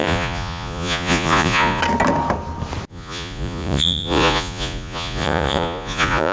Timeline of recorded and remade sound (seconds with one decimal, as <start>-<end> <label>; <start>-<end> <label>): 0.0-1.8 remade; 1.8-2.9 recorded; 2.9-6.3 remade